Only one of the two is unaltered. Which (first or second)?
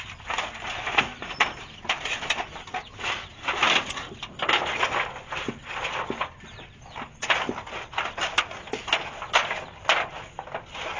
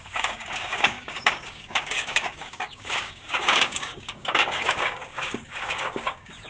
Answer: first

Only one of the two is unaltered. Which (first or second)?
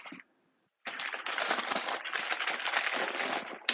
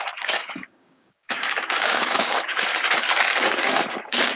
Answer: first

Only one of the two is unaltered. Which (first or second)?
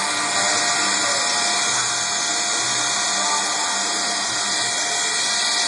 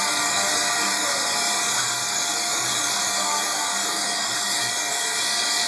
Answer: first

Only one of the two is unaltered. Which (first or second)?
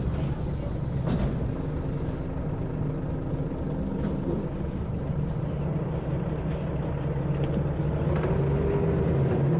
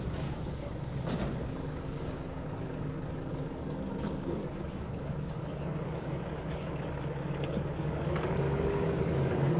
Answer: first